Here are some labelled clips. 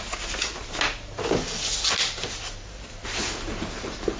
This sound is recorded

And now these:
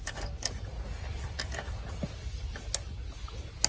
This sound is recorded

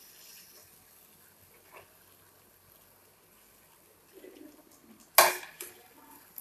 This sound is recorded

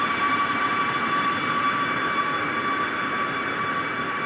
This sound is remade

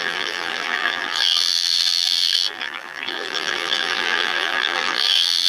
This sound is remade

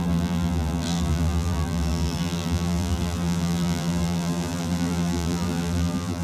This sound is remade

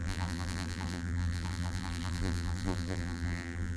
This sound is remade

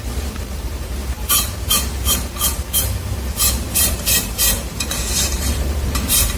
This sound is remade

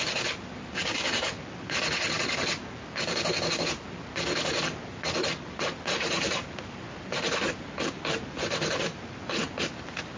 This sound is recorded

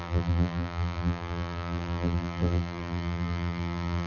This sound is remade